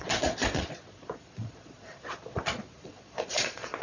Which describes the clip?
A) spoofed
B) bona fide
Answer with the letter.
A